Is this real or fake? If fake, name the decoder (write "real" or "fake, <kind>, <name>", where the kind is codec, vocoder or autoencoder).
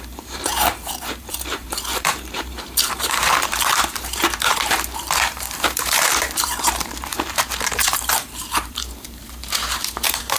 fake, vocoder, BigVGAN v2